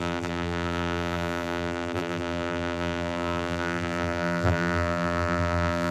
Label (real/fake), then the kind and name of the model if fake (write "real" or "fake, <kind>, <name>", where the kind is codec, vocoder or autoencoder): fake, vocoder, BigVGAN v2